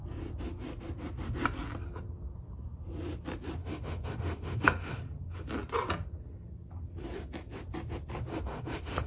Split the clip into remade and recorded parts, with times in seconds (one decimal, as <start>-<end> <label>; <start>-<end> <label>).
0.0-3.6 recorded; 3.6-5.0 remade; 5.0-8.3 recorded; 8.3-9.1 remade